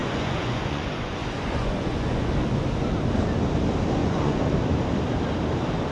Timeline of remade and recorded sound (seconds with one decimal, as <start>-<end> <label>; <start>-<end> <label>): 0.0-2.3 remade; 2.3-4.0 recorded; 4.0-4.5 remade; 4.5-5.9 recorded